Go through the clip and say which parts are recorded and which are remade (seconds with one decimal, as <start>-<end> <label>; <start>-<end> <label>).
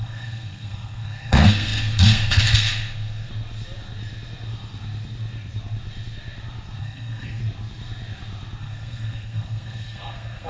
0.0-3.3 remade; 3.3-6.8 recorded; 6.8-7.4 remade; 7.4-8.6 recorded; 8.6-10.5 remade